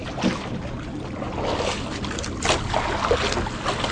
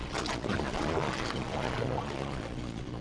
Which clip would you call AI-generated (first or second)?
second